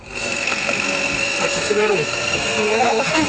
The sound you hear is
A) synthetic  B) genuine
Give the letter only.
A